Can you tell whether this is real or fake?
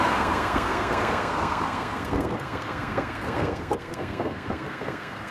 fake